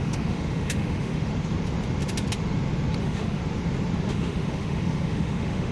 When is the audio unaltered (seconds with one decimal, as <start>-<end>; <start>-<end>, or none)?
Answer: 1.3-3.0; 3.4-4.1